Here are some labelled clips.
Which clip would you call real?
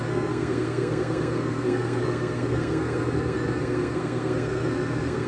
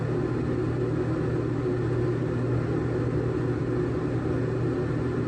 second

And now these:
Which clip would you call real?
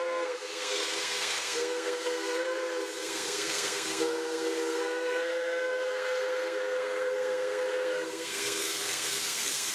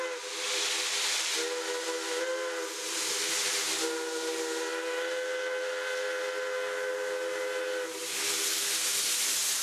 second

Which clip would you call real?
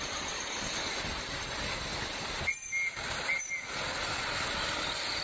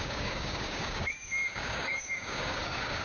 first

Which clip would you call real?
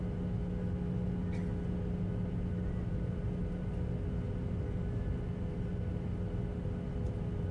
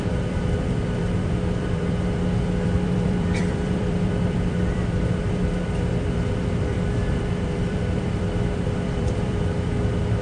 first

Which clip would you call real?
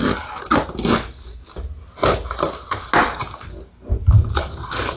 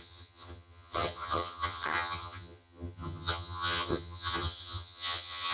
first